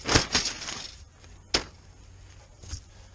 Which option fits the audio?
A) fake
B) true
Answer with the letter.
B